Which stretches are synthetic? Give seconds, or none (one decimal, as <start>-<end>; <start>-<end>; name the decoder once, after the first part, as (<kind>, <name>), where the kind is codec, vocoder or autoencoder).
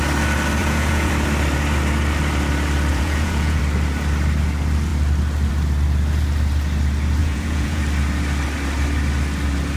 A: 0.6-1.1 (vocoder, Vocos); 2.9-3.6; 7.2-7.8